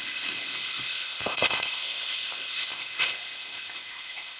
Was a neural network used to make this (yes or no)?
yes